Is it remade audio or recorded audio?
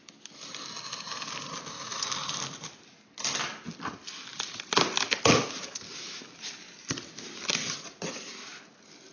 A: recorded